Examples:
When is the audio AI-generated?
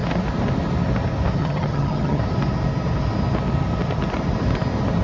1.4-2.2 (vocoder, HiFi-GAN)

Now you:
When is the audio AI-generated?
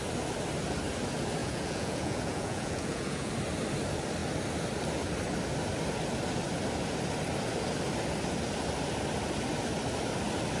1.4-3.3 (vocoder, Vocos)